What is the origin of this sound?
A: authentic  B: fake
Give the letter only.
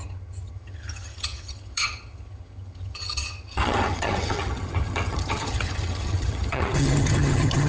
B